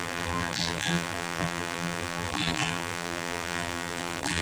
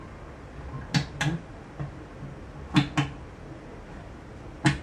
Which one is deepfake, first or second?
first